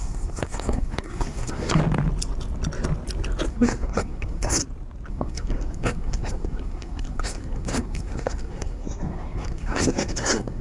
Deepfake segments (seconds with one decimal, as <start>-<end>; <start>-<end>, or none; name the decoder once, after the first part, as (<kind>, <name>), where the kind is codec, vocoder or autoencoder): 0.0-1.8 (codec, SNAC); 3.5-4.6; 5.1-10.6